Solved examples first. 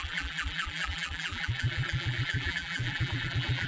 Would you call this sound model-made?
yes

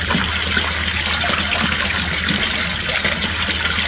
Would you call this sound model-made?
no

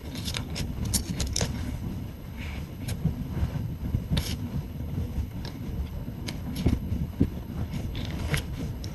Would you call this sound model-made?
yes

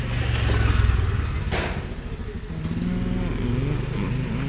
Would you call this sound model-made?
no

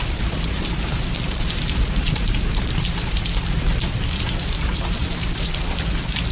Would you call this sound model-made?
yes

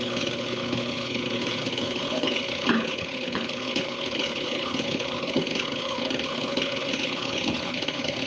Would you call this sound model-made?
yes